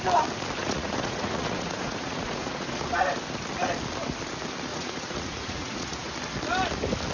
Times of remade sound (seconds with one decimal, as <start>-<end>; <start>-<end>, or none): 0.6-2.8; 4.7-6.1